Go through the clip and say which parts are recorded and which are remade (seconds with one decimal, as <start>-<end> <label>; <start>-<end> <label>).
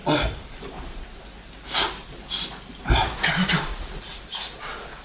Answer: 0.0-3.7 recorded; 3.7-4.4 remade; 4.4-5.0 recorded